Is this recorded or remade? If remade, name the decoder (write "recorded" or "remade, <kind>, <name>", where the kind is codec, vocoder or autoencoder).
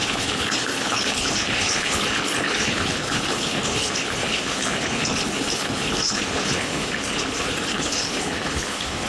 remade, codec, HILCodec